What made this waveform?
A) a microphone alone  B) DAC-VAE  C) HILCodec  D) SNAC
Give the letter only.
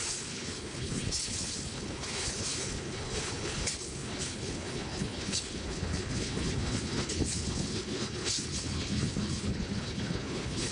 C